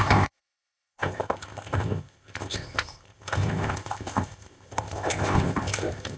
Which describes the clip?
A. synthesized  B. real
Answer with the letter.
A